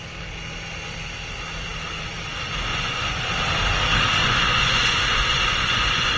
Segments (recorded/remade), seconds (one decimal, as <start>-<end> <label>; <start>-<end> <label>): 0.0-2.7 recorded; 2.7-3.3 remade; 3.3-4.2 recorded; 4.2-6.2 remade